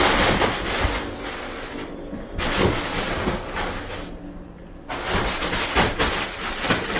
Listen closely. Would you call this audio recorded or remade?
recorded